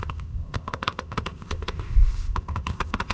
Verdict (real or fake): fake